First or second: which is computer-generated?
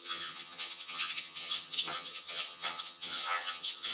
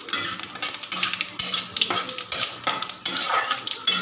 first